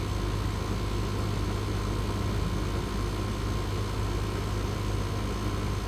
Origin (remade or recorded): recorded